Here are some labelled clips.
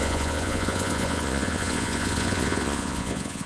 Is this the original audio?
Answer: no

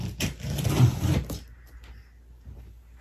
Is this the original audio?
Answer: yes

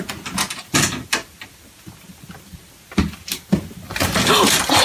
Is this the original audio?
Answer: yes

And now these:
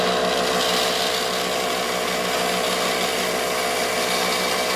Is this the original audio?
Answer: yes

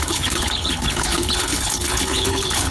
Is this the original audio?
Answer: no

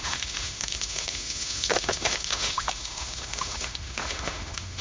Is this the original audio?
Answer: no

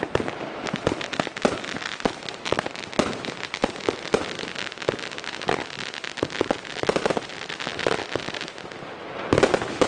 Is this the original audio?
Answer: yes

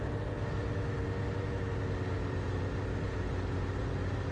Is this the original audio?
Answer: yes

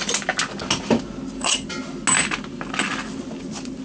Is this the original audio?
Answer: yes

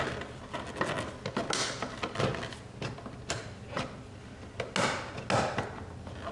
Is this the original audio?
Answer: yes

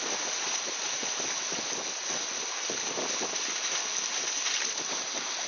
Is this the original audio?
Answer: yes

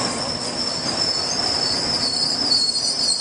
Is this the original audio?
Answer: no